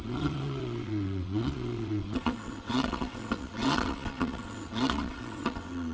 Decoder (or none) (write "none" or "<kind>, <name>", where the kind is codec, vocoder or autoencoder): vocoder, WaveNeXt